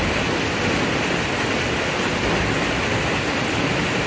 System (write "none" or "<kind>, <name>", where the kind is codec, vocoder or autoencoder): none